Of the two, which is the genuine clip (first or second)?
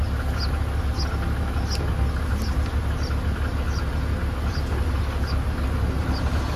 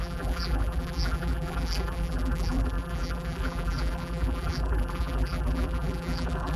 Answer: first